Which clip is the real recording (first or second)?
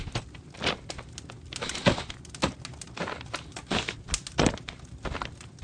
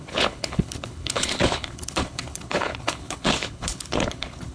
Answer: first